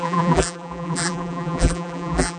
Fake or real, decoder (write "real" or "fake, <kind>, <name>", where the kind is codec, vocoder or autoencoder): fake, vocoder, BigVGAN v2